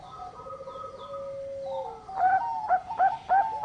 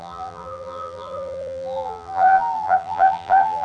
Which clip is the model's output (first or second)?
second